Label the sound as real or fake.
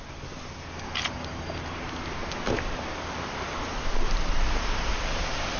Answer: real